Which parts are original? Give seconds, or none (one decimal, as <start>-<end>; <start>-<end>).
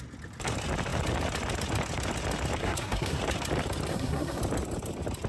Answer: 0.0-2.6; 3.2-3.9; 4.4-5.3